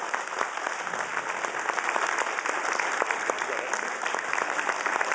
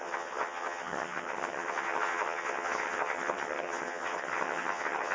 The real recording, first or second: first